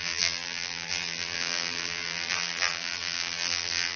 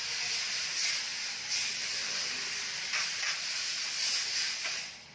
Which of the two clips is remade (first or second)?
first